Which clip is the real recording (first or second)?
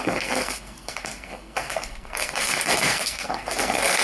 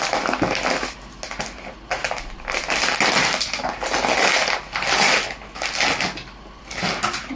second